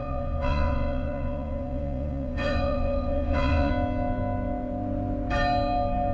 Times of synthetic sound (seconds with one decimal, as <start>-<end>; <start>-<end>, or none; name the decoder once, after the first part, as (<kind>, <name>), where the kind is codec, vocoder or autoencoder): 0.0-3.7 (vocoder, Vocos)